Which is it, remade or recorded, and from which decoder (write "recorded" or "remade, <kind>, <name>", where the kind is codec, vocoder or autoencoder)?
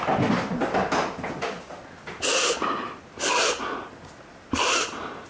recorded